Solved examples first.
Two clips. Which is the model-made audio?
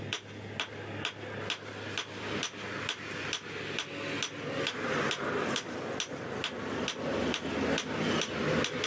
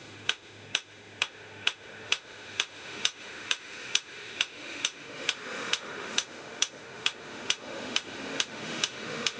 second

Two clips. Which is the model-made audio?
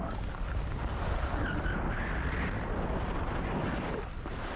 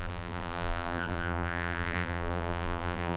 second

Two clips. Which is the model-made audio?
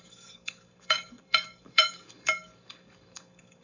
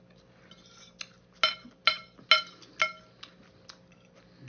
first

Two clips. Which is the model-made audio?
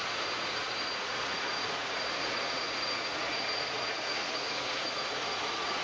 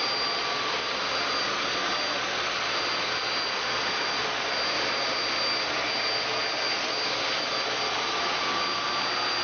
first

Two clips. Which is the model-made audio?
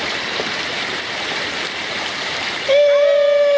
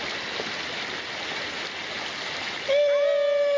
first